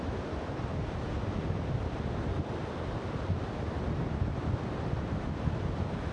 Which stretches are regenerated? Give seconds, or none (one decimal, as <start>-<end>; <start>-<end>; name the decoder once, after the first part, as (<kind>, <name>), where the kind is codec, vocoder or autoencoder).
none

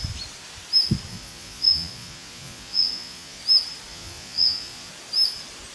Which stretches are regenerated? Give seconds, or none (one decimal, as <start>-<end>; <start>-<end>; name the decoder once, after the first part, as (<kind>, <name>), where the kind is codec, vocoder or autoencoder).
1.1-3.4 (vocoder, Vocos); 3.9-4.9

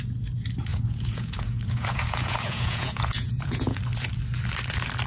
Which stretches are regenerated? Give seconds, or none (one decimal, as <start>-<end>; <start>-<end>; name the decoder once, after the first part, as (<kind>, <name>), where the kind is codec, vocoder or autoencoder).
0.7-3.8 (vocoder, Vocos)

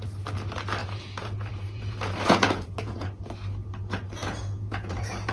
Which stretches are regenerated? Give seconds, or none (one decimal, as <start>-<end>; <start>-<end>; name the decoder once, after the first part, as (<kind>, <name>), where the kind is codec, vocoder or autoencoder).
0.8-3.2 (vocoder, Vocos); 4.2-5.3

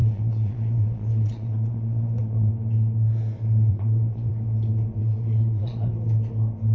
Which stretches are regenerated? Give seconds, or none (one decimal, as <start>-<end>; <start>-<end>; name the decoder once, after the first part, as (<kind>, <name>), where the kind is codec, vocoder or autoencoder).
0.0-2.5 (vocoder, Vocos); 3.7-4.3; 5.0-5.9

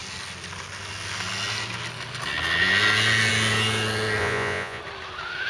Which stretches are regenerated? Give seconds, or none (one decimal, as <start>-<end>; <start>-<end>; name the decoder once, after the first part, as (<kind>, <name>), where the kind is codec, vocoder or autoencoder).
4.2-4.8 (vocoder, Vocos)